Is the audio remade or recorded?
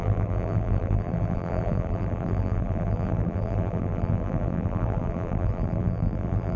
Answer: remade